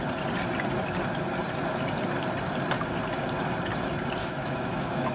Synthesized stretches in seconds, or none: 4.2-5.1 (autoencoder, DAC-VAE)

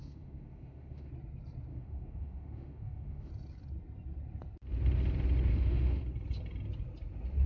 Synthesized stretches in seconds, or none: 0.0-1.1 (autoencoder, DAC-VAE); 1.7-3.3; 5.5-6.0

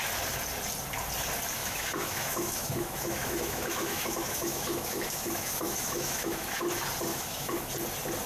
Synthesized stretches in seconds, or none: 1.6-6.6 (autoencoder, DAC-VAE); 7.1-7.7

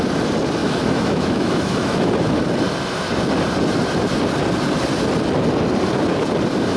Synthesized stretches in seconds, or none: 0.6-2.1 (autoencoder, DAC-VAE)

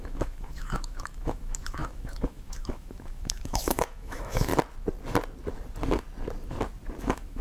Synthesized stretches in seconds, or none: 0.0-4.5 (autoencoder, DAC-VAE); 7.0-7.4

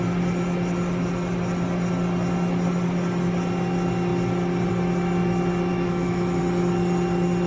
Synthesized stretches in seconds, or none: 5.7-6.4 (autoencoder, DAC-VAE)